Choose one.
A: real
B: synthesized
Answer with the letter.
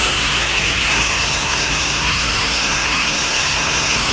B